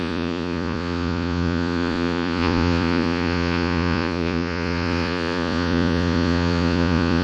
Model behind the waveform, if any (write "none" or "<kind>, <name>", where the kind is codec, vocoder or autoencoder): vocoder, Vocos